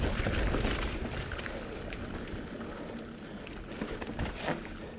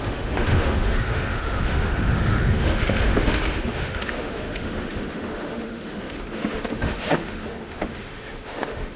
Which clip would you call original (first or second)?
first